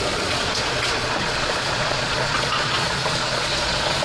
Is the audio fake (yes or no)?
yes